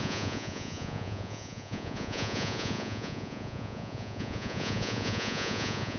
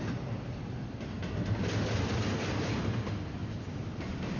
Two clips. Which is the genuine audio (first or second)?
second